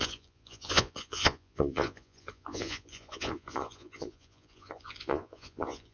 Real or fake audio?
fake